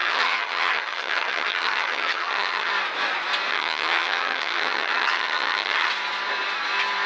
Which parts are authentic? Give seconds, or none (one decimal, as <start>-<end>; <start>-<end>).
2.7-3.5; 5.9-7.1